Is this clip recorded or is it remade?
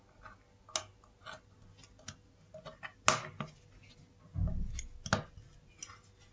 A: recorded